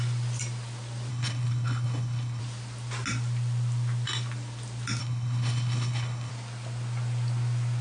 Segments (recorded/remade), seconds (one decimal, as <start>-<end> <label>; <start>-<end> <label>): 0.0-1.1 recorded; 1.1-2.4 remade; 2.4-5.0 recorded; 5.0-6.3 remade; 6.3-7.8 recorded